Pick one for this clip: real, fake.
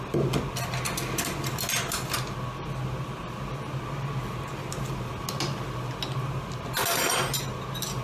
real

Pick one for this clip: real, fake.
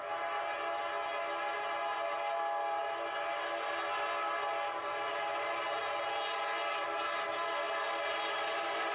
real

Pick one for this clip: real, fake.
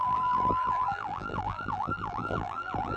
fake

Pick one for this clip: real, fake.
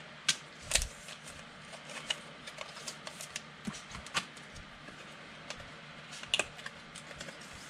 real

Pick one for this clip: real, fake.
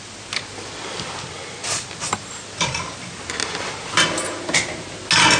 real